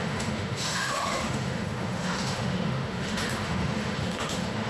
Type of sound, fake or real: fake